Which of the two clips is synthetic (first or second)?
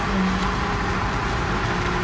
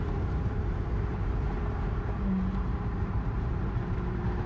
second